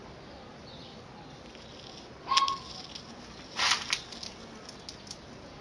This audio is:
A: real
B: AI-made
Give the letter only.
A